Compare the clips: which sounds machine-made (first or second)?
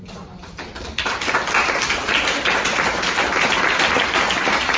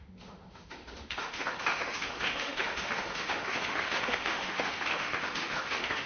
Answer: second